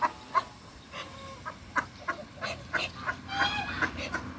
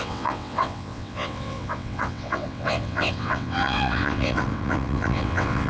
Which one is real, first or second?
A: first